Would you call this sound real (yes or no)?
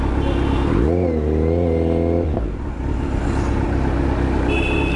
yes